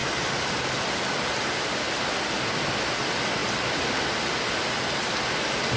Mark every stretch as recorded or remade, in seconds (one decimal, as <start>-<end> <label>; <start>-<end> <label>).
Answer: 0.0-5.8 recorded